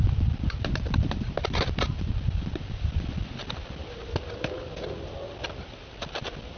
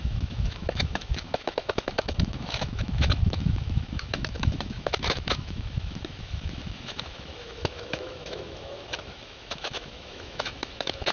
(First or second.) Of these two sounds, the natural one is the first